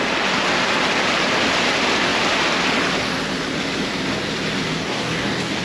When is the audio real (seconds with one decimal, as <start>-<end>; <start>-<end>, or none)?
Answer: 0.0-4.7